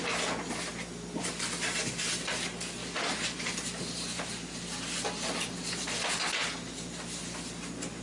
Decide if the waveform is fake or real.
real